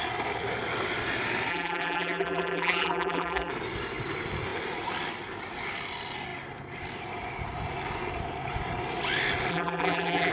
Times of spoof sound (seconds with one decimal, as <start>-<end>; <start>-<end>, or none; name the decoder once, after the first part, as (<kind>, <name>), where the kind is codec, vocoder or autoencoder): 1.5-3.5 (vocoder, BigVGAN v2); 9.5-10.3